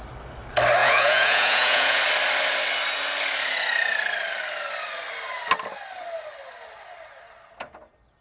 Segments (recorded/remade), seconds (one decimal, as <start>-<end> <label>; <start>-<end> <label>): 0.0-0.8 recorded; 0.8-2.0 remade; 2.0-8.2 recorded